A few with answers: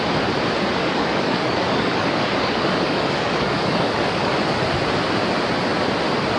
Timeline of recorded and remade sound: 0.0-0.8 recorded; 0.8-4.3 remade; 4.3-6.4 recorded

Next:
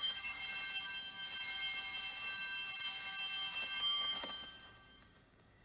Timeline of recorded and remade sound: 0.0-0.4 remade; 0.4-3.8 recorded; 3.8-5.6 remade

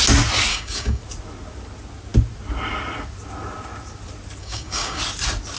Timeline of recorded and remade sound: 0.0-0.5 recorded; 0.5-1.0 remade; 1.0-4.4 recorded; 4.4-5.0 remade; 5.0-5.6 recorded

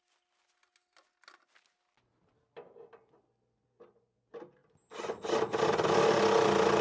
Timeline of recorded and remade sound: 0.0-6.8 recorded